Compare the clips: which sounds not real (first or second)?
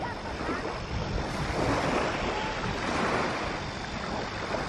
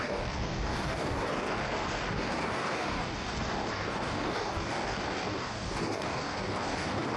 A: second